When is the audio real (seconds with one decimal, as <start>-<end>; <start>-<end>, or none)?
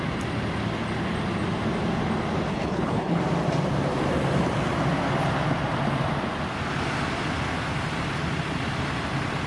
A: 0.0-2.5; 3.2-9.5